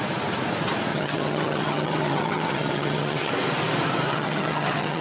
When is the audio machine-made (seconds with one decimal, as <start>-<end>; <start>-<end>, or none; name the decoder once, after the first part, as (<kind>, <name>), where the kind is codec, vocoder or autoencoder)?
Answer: 0.9-3.3 (vocoder, HiFi-GAN); 4.1-5.0

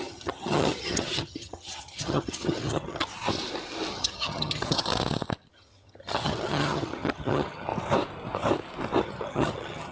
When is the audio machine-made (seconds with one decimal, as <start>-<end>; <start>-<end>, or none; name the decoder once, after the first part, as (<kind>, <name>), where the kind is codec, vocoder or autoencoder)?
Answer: 0.0-3.1 (vocoder, HiFi-GAN); 3.9-4.9; 5.5-7.7; 9.0-9.9

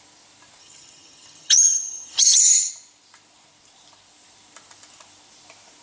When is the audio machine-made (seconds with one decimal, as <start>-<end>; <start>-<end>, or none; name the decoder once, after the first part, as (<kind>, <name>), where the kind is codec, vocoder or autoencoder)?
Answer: 0.6-2.7 (vocoder, HiFi-GAN)

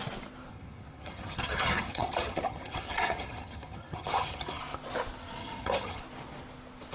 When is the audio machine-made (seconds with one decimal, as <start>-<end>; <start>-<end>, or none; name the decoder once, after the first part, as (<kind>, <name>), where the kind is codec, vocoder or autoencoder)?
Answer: 0.5-4.6 (vocoder, HiFi-GAN); 5.4-6.0

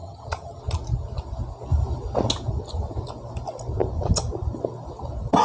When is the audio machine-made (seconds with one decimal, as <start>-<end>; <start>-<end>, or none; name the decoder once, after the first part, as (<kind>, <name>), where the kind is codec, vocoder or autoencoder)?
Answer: 0.0-0.6 (vocoder, HiFi-GAN)

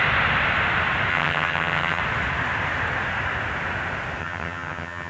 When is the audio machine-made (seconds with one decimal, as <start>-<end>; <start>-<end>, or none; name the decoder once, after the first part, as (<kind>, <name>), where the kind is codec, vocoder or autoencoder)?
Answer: 1.1-2.0 (vocoder, HiFi-GAN); 4.2-5.1

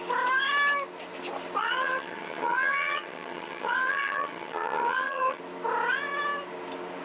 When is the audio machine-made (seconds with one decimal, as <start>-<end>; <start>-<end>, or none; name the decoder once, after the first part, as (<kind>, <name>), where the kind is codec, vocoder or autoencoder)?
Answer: 1.6-5.4 (vocoder, HiFi-GAN)